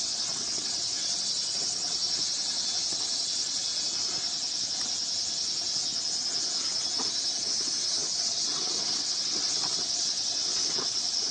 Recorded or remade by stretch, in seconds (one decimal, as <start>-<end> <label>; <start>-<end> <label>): 0.0-2.0 remade; 2.0-2.9 recorded; 2.9-3.7 remade; 3.7-8.2 recorded; 8.2-11.3 remade